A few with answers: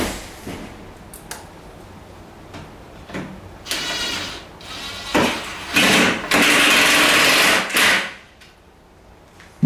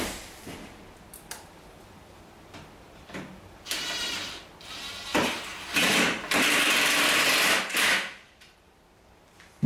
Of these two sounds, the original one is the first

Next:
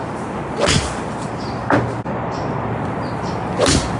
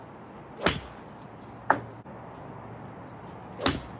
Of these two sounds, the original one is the second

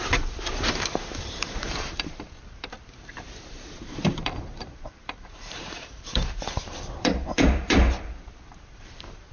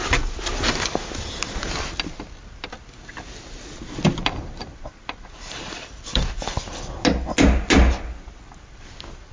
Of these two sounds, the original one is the second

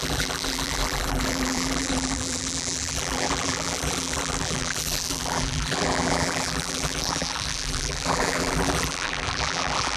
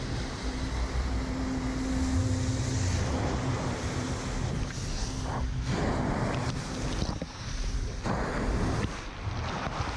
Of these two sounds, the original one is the second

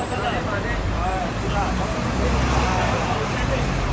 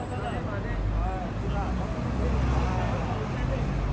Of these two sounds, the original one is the second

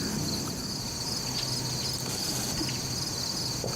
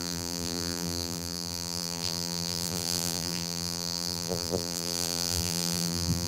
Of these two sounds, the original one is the first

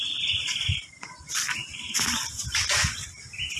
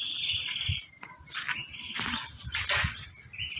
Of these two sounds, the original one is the second